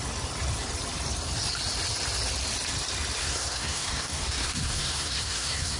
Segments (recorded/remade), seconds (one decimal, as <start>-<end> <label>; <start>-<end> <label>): 0.0-3.2 recorded; 3.2-5.8 remade